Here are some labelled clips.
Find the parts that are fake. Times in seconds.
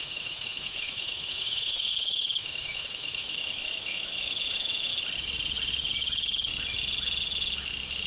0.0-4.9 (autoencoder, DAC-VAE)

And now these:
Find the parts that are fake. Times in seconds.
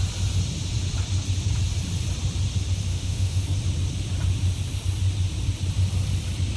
2.9-3.4 (autoencoder, DAC-VAE)